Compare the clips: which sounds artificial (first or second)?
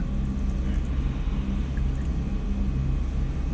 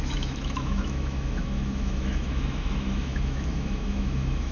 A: second